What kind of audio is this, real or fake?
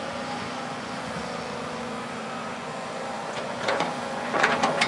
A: fake